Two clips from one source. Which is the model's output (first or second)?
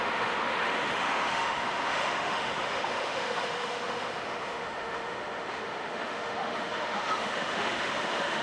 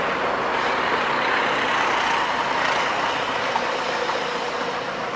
first